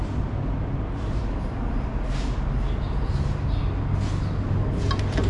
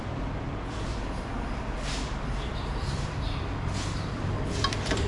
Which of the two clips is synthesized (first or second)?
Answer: second